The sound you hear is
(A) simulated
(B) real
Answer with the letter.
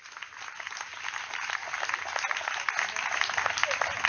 B